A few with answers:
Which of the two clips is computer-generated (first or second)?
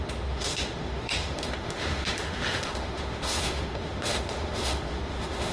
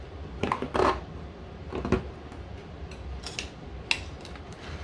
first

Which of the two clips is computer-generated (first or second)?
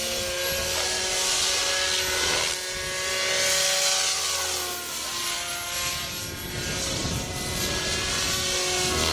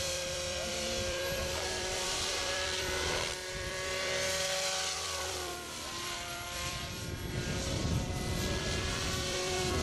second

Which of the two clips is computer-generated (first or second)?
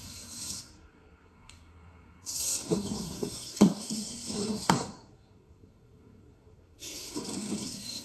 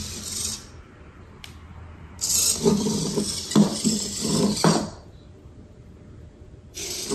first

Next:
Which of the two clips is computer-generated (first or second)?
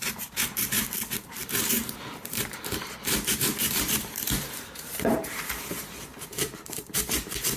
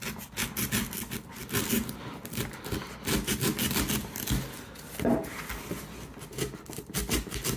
first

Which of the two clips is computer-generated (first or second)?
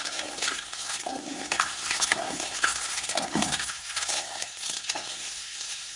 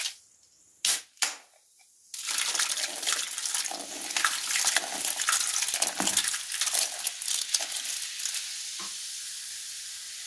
first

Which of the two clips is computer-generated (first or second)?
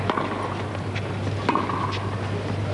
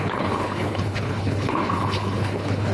second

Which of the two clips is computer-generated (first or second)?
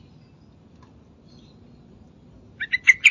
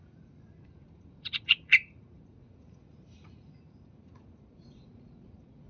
second